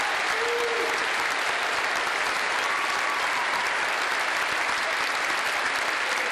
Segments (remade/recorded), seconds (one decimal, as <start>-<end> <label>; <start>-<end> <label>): 0.0-6.3 recorded